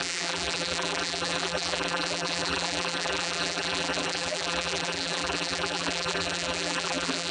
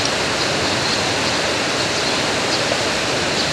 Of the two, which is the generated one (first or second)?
first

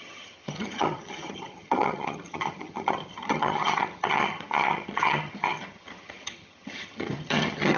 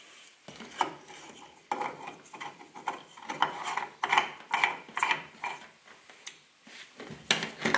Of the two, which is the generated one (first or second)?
first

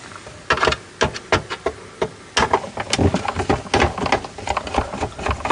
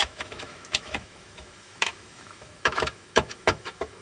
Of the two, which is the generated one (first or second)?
second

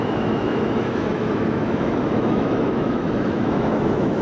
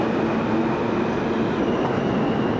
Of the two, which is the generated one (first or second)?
first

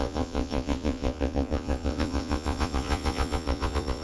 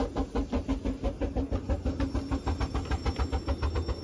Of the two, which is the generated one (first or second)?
first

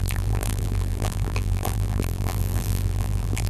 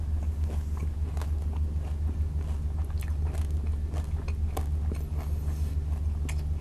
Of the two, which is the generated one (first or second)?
first